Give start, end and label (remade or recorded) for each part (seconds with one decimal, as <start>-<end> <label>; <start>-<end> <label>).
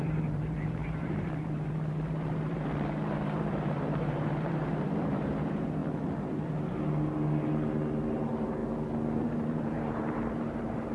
0.0-5.8 remade; 5.8-8.1 recorded; 8.1-8.6 remade; 8.6-9.2 recorded; 9.2-10.9 remade